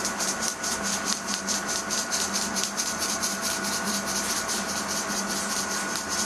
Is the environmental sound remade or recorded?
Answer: remade